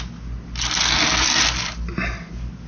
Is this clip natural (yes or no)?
yes